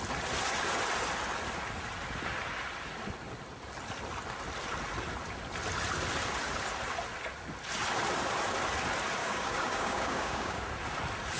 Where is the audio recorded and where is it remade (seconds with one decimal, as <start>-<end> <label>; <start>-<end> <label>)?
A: 0.0-9.2 recorded; 9.2-10.6 remade; 10.6-11.4 recorded